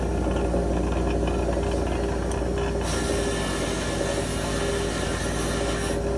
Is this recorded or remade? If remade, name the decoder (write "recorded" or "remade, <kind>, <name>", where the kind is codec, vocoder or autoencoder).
recorded